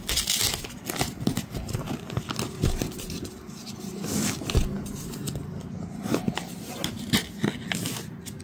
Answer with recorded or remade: recorded